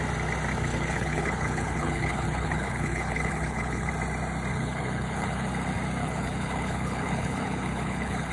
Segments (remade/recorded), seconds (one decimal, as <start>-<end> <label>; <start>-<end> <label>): 0.0-0.7 recorded; 0.7-3.9 remade; 3.9-4.5 recorded; 4.5-5.5 remade; 5.5-6.0 recorded; 6.0-8.3 remade